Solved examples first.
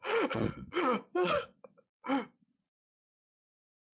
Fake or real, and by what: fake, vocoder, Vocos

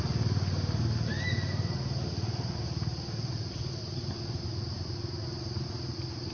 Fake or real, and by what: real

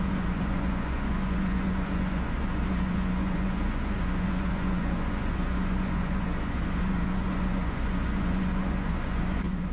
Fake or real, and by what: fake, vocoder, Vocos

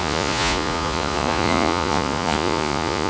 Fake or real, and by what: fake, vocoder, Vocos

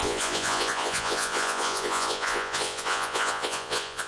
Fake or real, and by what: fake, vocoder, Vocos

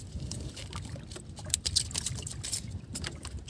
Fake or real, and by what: real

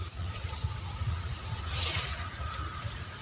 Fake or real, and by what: fake, vocoder, Vocos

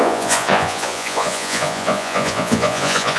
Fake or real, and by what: fake, vocoder, Vocos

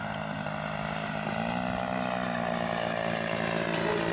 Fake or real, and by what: real